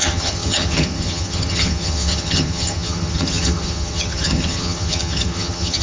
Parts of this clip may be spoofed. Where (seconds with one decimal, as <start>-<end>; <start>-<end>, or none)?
0.0-5.8